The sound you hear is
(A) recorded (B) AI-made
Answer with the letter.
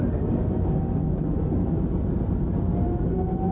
A